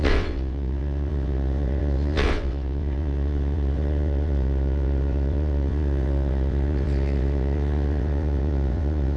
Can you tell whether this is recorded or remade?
remade